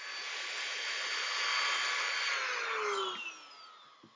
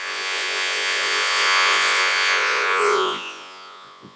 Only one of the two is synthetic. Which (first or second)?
second